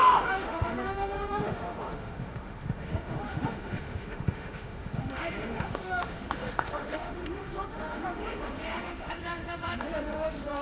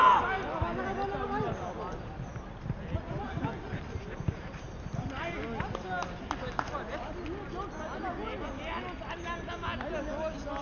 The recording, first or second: second